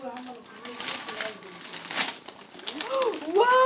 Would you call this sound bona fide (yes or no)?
yes